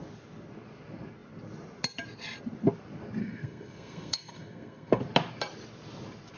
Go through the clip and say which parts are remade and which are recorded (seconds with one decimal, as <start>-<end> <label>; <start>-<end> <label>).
0.0-3.2 recorded; 3.2-5.0 remade; 5.0-6.4 recorded